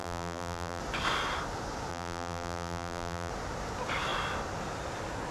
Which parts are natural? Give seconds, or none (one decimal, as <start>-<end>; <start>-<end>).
0.8-1.9; 3.3-5.3